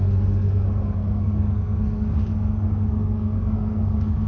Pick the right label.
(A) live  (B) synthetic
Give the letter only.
B